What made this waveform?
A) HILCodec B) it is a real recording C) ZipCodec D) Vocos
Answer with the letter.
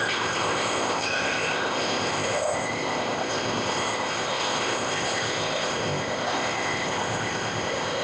C